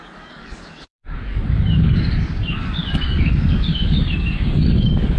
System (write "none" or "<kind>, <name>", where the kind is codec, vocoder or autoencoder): codec, DAC